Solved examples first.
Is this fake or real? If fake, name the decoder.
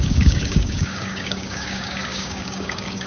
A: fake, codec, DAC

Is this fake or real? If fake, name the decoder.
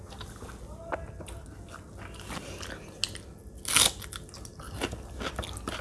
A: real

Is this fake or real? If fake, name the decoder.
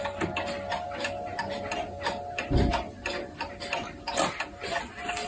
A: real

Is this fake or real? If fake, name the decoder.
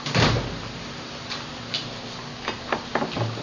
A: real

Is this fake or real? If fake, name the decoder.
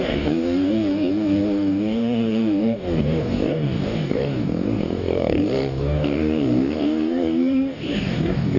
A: fake, codec, DAC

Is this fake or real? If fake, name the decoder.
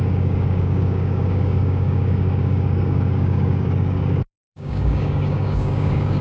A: fake, codec, DAC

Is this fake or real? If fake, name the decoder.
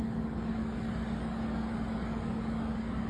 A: fake, codec, DAC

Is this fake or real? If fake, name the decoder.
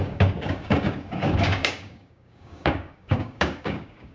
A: fake, codec, DAC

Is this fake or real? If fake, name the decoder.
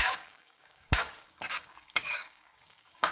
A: fake, codec, DAC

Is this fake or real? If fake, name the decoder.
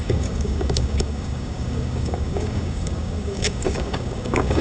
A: fake, codec, DAC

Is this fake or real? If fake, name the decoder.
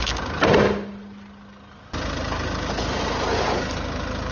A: real